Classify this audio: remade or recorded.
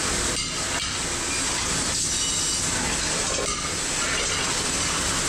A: recorded